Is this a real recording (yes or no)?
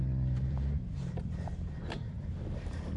no